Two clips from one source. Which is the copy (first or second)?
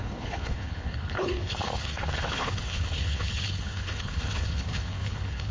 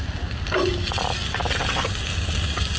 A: first